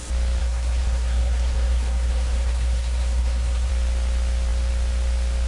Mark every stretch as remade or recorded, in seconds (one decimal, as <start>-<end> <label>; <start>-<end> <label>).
0.0-0.4 recorded; 0.4-3.7 remade; 3.7-5.5 recorded